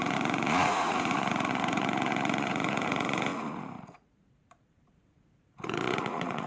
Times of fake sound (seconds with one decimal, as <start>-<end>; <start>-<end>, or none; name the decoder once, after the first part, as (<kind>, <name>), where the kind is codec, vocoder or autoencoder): 0.0-6.5 (vocoder, Vocos)